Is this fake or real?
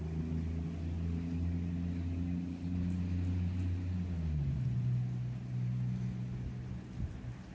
real